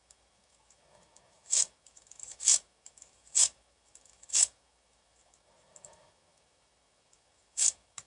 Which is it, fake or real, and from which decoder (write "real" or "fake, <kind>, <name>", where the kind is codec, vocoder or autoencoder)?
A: fake, autoencoder, DAC-VAE